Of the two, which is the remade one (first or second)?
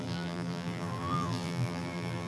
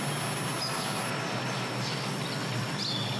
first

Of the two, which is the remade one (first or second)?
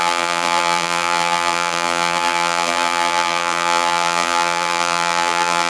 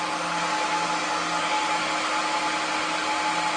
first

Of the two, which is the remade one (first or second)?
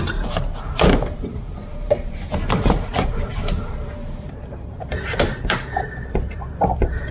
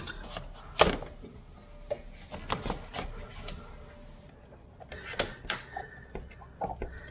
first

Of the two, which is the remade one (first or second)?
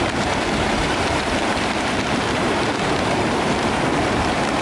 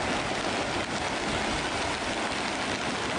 first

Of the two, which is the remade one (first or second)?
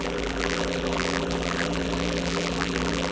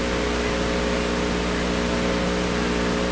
first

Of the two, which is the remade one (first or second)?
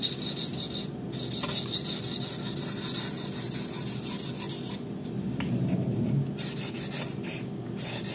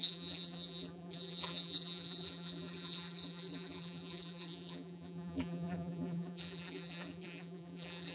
second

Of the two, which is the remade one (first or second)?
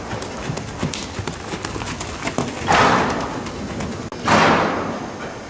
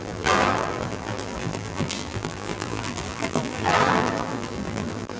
second